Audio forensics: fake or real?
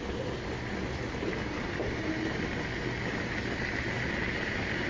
real